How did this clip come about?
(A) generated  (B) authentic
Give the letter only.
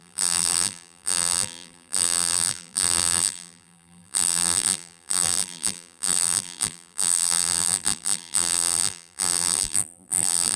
A